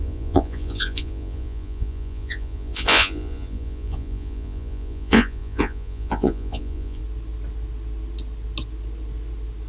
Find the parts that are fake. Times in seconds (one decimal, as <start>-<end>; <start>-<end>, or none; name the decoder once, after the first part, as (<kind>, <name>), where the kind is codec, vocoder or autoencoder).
0.0-7.0 (vocoder, Vocos)